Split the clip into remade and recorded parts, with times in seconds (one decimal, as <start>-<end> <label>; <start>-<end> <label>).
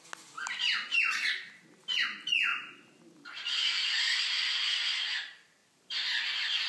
0.0-2.5 recorded; 2.5-4.9 remade; 4.9-5.6 recorded; 5.6-6.7 remade